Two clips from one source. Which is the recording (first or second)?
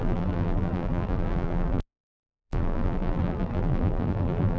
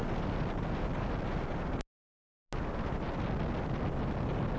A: second